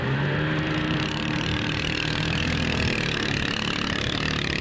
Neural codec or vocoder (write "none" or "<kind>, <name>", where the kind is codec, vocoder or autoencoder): vocoder, BigVGAN v2